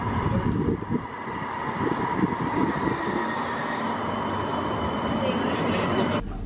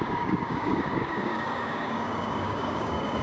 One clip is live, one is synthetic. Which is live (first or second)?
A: first